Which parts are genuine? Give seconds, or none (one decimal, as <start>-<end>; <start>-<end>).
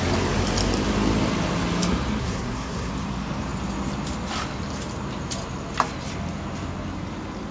0.0-2.2; 2.9-7.5